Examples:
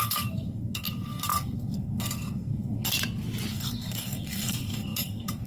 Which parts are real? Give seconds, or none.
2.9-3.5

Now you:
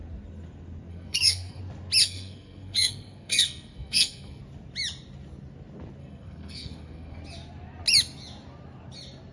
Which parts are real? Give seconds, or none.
0.0-0.9; 1.6-2.0; 4.4-6.0; 7.2-9.3